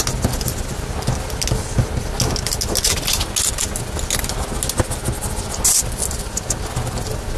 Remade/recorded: recorded